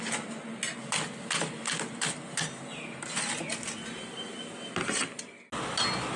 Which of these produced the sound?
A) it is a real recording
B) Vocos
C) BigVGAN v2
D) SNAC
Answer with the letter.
A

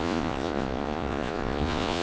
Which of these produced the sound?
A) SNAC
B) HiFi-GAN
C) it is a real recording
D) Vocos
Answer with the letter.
D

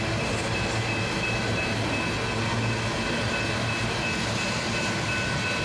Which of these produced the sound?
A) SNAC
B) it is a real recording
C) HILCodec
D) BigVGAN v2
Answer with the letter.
B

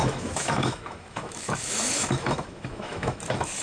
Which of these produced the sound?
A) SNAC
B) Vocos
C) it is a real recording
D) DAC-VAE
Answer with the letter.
D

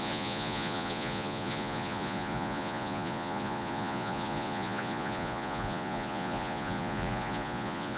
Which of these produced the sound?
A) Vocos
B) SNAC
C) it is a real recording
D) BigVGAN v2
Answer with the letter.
A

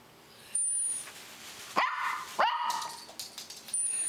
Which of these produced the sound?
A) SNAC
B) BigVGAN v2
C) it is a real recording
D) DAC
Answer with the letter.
C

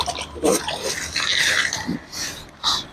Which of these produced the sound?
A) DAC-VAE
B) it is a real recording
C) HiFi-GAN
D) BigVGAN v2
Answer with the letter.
B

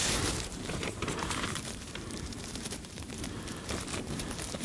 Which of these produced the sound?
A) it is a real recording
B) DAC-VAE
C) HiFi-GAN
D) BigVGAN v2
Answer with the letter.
D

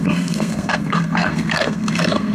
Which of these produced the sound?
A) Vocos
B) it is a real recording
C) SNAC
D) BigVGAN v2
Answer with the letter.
C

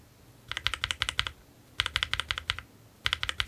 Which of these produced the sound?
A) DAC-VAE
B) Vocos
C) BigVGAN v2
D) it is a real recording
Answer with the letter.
D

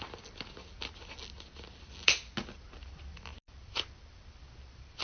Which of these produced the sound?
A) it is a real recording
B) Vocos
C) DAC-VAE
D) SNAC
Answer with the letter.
A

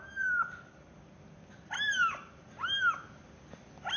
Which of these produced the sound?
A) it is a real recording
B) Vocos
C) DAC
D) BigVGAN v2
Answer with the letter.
A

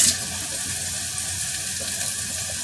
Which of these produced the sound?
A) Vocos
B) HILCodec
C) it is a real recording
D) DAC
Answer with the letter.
C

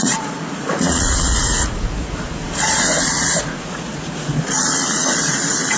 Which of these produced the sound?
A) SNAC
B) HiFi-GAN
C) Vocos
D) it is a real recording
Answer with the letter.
C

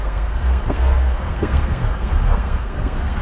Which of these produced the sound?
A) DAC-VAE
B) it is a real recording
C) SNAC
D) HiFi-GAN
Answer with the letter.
C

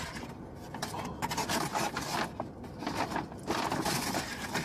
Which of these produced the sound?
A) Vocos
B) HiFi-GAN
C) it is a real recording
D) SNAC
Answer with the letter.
C